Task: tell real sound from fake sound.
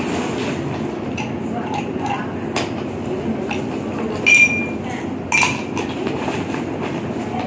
real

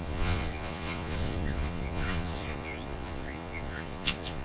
fake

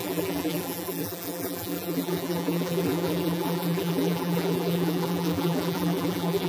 fake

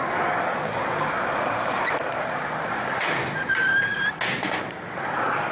real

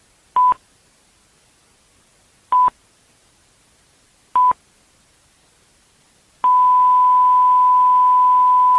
real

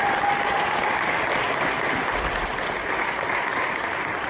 real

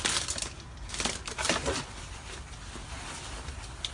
real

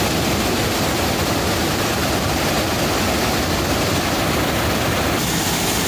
real